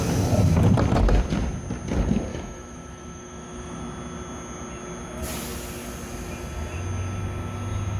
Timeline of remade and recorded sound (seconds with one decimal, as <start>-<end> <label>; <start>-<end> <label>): 0.0-2.3 recorded; 2.3-3.8 remade; 3.8-8.0 recorded